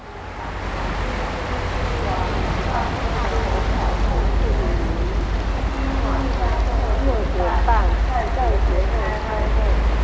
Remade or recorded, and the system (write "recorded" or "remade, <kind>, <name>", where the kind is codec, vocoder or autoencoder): recorded